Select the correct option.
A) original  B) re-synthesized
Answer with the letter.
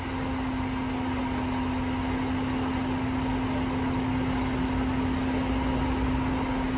A